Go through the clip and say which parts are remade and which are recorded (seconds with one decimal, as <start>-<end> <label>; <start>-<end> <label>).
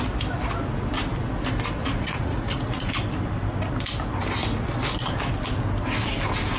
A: 0.0-1.8 recorded; 1.8-2.9 remade; 2.9-6.6 recorded